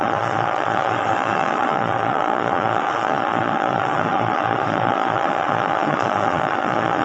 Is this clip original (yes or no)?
no